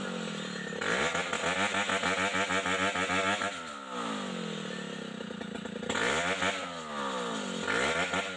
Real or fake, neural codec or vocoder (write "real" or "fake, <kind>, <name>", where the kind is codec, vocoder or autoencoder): real